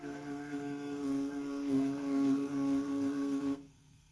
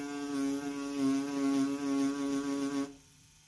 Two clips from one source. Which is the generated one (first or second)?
first